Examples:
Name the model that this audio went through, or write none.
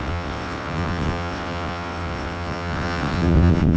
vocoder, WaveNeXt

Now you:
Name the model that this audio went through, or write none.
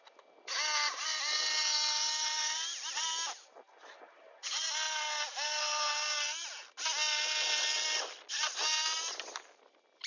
none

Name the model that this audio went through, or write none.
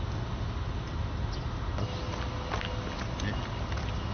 none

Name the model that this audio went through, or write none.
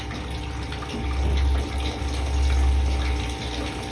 none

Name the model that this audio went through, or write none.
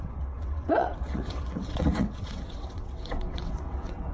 vocoder, WaveNeXt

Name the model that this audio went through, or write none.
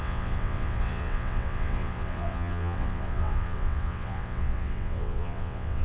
vocoder, WaveNeXt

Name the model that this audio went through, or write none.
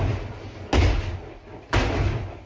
none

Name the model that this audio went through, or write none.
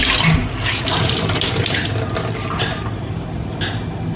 none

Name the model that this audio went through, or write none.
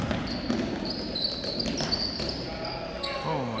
none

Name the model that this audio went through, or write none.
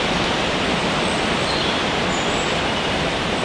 none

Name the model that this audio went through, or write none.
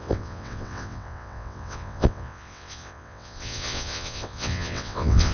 vocoder, WaveNeXt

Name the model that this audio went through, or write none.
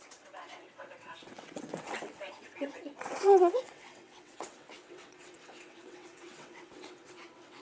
vocoder, WaveNeXt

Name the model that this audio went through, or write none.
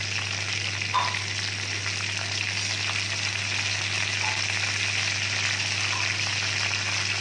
none